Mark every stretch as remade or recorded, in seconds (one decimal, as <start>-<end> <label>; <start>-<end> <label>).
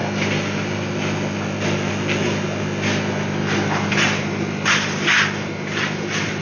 0.0-6.4 recorded